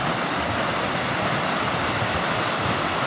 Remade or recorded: remade